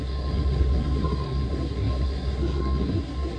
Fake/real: fake